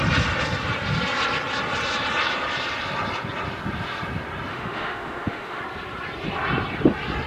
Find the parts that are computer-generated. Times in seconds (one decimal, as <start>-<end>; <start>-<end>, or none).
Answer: 4.5-5.6